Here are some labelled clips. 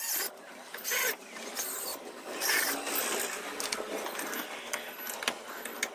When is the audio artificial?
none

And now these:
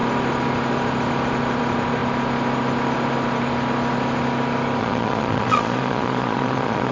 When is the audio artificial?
4.8-6.9